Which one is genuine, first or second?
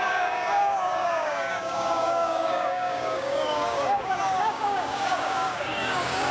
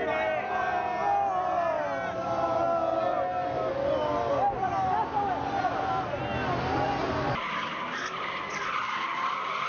second